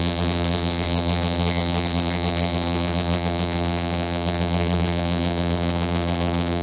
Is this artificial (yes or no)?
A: yes